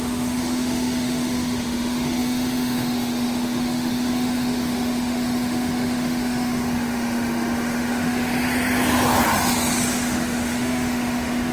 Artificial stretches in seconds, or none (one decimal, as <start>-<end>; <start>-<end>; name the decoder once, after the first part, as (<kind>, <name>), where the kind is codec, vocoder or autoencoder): 0.0-8.3 (autoencoder, DAC-VAE); 9.9-11.5